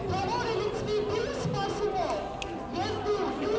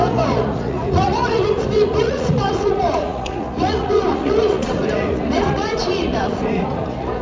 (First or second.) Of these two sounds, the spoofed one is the second